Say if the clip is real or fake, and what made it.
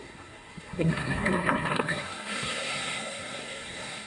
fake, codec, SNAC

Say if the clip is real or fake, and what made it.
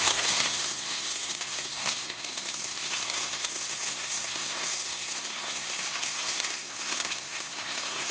fake, codec, SNAC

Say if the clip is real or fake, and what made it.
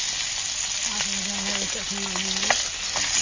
real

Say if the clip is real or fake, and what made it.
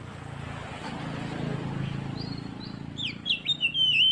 real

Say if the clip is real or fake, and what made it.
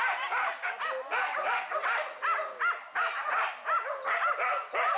real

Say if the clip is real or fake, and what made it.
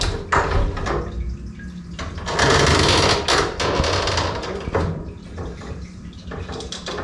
real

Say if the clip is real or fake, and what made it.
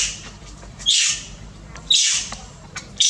fake, vocoder, BigVGAN v2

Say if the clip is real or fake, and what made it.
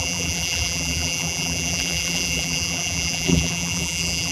fake, vocoder, BigVGAN v2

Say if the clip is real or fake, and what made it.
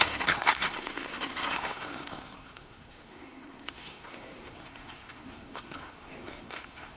fake, codec, SNAC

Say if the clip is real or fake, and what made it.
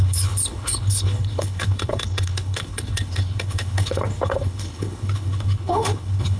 fake, codec, HILCodec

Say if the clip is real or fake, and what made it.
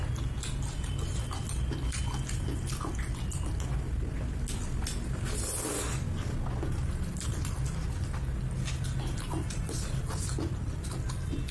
real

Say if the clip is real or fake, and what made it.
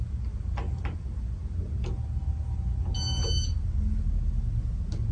real